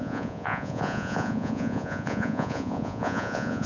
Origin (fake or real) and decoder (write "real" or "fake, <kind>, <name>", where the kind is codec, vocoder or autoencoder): fake, vocoder, Vocos